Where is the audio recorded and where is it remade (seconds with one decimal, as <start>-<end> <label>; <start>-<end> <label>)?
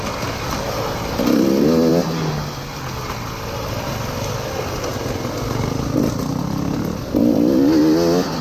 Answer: 0.0-8.4 recorded